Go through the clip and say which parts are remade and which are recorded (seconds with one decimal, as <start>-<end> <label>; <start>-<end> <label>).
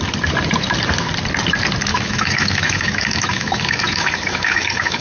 0.0-1.9 recorded; 1.9-5.0 remade